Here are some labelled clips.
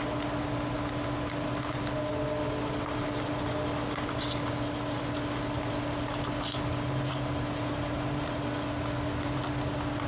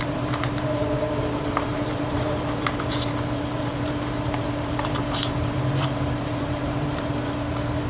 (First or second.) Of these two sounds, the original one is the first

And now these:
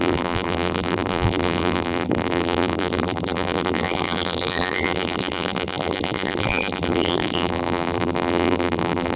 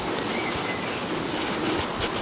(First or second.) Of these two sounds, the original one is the second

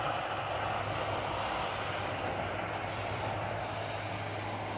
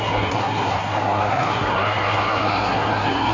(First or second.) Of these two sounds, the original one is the first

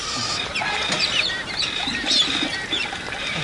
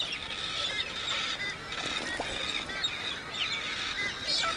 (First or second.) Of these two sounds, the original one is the second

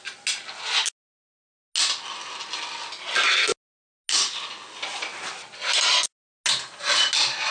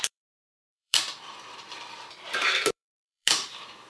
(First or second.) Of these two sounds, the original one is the first